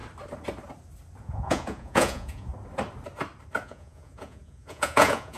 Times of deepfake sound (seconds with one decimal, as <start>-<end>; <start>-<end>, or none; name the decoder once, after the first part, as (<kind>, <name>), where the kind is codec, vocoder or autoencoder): 1.2-2.5 (vocoder, Vocos); 3.6-5.4